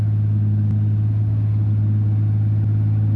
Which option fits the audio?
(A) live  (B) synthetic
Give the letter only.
A